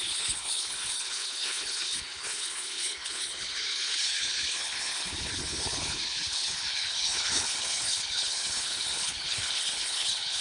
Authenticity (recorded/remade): remade